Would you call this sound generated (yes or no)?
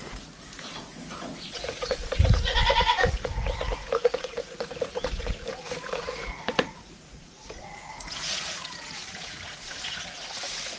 yes